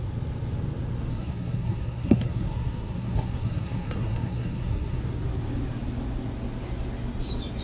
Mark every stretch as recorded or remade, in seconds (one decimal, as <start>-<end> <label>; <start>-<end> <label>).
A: 0.0-1.1 recorded; 1.1-5.0 remade; 5.0-7.6 recorded